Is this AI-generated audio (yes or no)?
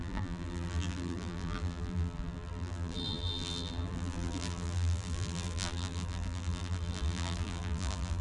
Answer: yes